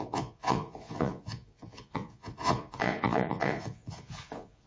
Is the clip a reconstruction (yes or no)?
yes